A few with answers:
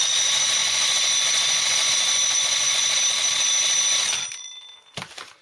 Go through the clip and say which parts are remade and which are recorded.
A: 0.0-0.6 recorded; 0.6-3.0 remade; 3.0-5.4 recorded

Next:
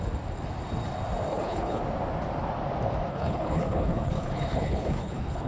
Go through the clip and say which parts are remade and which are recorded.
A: 0.0-1.3 recorded; 1.3-1.8 remade; 1.8-3.1 recorded; 3.1-5.5 remade